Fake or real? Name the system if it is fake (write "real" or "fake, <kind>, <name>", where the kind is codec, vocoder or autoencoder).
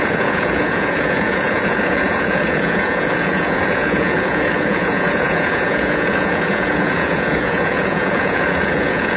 fake, vocoder, Vocos